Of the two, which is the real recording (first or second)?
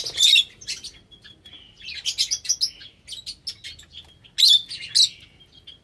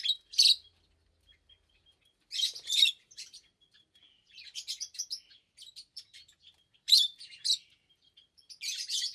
first